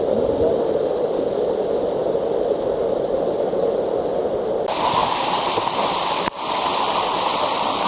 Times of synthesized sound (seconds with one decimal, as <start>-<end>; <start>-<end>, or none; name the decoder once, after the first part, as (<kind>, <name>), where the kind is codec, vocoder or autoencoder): none